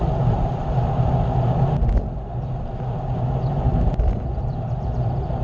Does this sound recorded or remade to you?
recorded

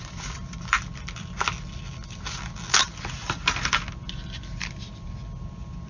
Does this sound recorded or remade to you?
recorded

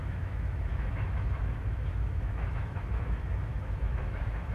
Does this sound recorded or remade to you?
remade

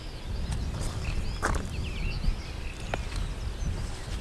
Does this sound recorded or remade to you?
recorded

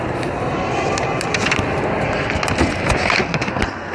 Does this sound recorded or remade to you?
recorded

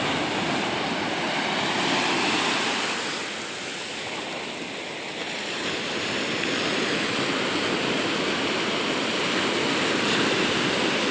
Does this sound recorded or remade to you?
recorded